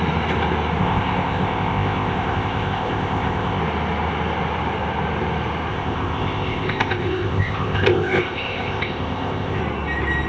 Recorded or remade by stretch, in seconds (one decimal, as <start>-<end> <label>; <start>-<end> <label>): 0.0-0.8 recorded; 0.8-3.6 remade; 3.6-5.7 recorded; 5.7-9.6 remade; 9.6-10.3 recorded